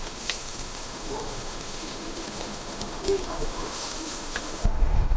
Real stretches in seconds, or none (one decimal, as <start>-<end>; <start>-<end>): none